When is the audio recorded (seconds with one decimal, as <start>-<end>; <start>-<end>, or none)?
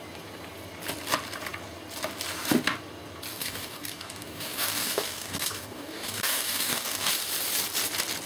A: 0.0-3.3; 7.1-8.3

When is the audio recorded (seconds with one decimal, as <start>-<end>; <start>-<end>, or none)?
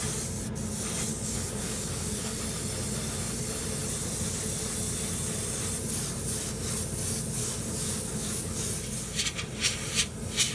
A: 0.0-1.1; 2.4-7.4; 8.6-10.5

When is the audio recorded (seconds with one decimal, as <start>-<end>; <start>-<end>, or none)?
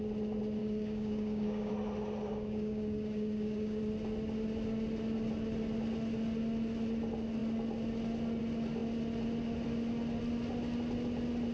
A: 0.0-0.6; 1.7-2.3; 3.8-11.5